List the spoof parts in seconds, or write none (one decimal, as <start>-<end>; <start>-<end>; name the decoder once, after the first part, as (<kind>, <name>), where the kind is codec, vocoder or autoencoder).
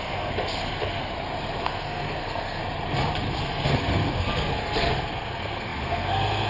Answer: 0.0-1.0 (codec, SNAC); 1.6-2.6; 3.4-6.5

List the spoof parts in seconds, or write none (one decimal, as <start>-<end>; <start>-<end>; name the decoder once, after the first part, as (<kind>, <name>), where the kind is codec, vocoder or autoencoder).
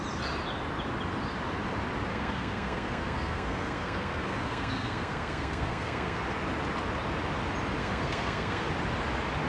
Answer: 2.1-6.2 (codec, SNAC); 7.8-8.7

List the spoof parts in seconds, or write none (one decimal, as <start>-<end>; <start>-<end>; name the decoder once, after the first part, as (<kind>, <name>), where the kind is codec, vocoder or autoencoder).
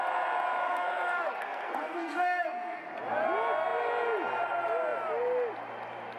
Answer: 0.6-2.9 (codec, SNAC)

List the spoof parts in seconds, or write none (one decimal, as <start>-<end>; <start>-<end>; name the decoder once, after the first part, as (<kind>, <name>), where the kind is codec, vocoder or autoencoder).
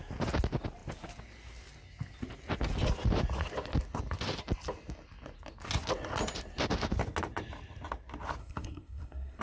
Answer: 8.4-9.4 (codec, SNAC)